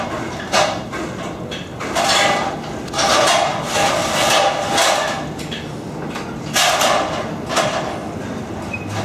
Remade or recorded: recorded